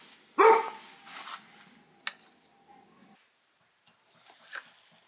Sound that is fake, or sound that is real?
real